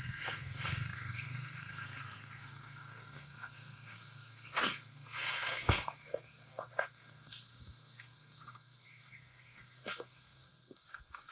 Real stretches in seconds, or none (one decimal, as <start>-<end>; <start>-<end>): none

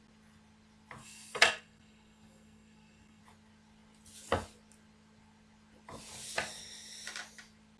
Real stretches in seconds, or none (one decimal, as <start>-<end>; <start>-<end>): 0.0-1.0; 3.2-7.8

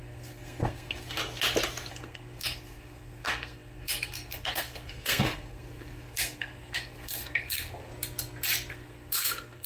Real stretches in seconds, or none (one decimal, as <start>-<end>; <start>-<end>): 1.2-1.9; 7.9-8.7

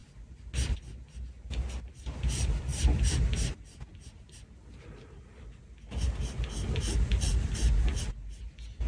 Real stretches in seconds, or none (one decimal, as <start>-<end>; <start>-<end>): 0.0-8.9

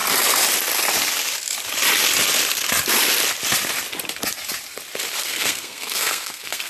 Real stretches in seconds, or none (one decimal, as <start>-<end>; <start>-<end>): 0.0-5.2

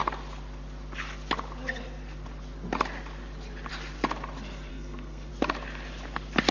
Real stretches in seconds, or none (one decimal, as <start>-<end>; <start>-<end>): 0.0-4.7; 5.3-6.5

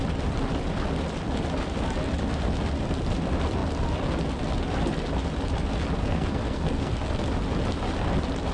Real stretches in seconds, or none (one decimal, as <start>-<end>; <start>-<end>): 0.0-6.0; 6.9-8.5

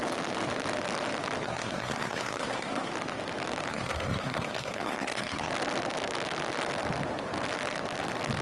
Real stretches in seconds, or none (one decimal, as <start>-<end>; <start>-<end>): 0.0-1.4; 2.9-3.7; 5.5-8.4